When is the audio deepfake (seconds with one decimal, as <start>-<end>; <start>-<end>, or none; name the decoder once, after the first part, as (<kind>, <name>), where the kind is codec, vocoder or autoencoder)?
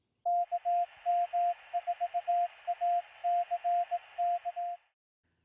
none